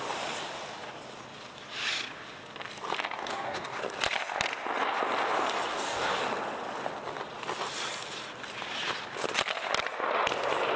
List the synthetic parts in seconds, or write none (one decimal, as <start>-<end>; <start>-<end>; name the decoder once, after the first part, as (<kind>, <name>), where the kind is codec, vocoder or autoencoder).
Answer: 3.2-3.8 (codec, DAC); 5.7-6.2